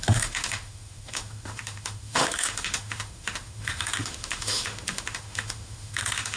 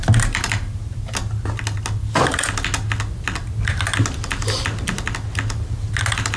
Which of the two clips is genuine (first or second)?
second